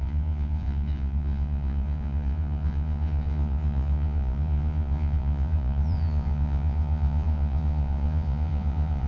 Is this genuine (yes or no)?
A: no